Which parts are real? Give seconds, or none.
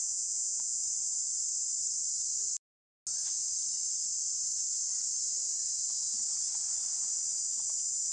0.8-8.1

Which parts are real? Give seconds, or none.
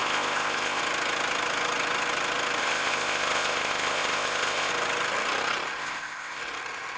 0.8-2.6; 4.7-5.8; 6.4-7.0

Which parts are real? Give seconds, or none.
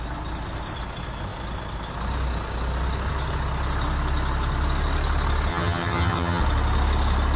0.0-5.5; 6.4-7.4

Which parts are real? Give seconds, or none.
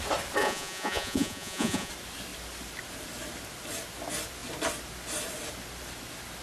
0.0-0.4; 1.9-6.4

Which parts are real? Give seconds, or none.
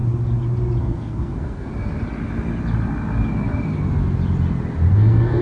0.0-0.8; 1.7-4.9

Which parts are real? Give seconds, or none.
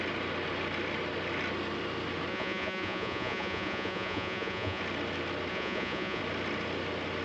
0.0-2.3; 4.8-5.5; 6.2-7.2